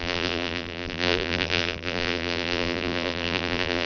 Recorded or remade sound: remade